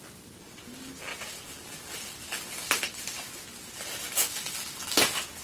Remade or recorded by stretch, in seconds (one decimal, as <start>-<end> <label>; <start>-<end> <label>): 0.0-5.4 recorded